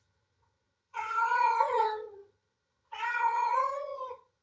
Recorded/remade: remade